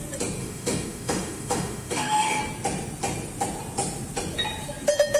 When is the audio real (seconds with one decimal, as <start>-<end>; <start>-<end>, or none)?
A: 0.0-0.4; 2.4-5.2